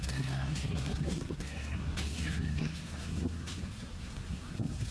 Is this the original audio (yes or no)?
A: no